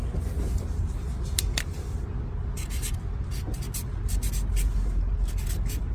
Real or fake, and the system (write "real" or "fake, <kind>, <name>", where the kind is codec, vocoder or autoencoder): real